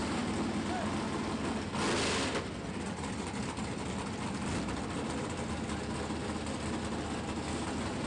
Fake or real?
real